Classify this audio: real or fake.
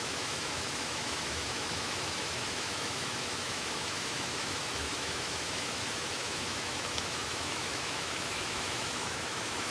fake